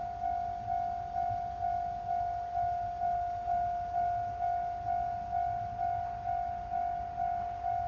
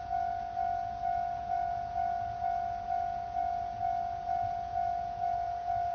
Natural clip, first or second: first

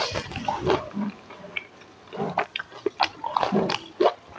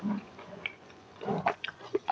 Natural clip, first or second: first